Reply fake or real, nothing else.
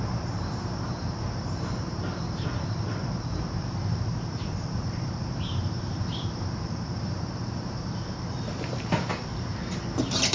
fake